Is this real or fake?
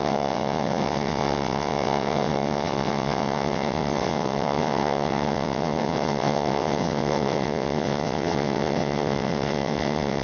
fake